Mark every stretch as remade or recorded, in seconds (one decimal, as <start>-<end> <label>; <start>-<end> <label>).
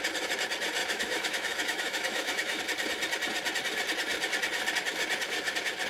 0.0-0.8 recorded; 0.8-2.6 remade; 2.6-5.9 recorded